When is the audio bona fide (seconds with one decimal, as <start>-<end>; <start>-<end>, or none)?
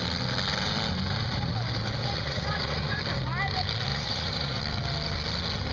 0.0-2.0; 3.0-3.9; 4.6-5.7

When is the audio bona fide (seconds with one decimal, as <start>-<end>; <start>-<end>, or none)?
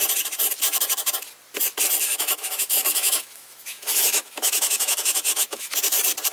0.0-2.0; 5.8-6.3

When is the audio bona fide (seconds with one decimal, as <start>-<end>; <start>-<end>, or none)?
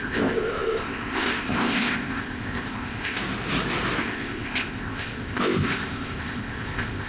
3.2-4.0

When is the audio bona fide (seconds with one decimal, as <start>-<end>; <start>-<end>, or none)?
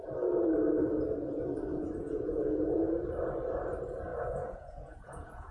0.0-1.7; 3.0-4.1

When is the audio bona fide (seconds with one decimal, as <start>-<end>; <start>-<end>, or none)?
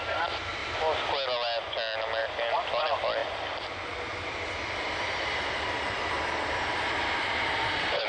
0.0-8.1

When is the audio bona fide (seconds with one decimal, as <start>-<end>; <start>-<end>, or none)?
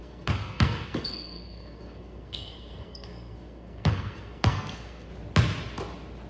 5.1-6.3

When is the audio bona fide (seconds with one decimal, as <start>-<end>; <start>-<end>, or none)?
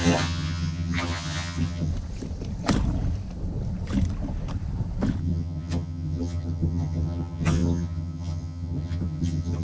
1.9-5.2